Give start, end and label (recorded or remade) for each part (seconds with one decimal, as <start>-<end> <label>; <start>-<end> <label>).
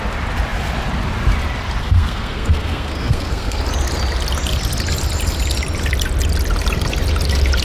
0.0-1.8 recorded; 1.8-3.6 remade; 3.6-7.6 recorded